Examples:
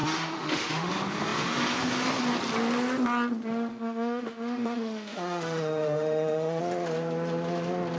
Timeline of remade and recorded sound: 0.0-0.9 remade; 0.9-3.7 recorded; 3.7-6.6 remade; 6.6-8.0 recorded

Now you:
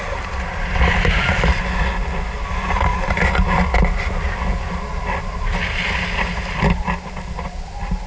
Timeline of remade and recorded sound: 0.0-8.1 recorded

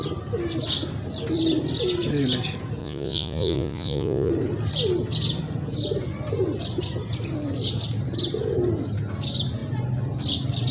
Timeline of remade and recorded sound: 0.0-2.8 recorded; 2.8-4.3 remade; 4.3-10.7 recorded

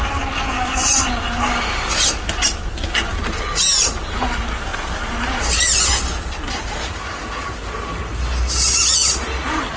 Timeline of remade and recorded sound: 0.0-9.8 recorded

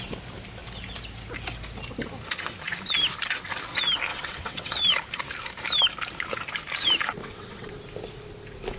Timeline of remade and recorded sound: 0.0-4.1 recorded; 4.1-4.8 remade; 4.8-7.2 recorded; 7.2-7.7 remade; 7.7-8.8 recorded

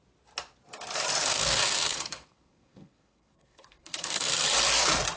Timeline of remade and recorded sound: 0.0-1.2 recorded; 1.2-4.3 remade; 4.3-5.2 recorded

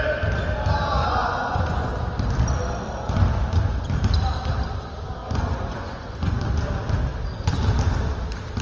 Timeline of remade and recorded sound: 0.0-1.0 recorded; 1.0-1.9 remade; 1.9-5.2 recorded; 5.2-6.4 remade; 6.4-8.6 recorded